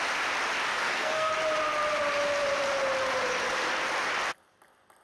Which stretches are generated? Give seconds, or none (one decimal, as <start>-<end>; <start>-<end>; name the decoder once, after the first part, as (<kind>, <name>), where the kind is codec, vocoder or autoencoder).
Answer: 0.7-1.3 (codec, SNAC)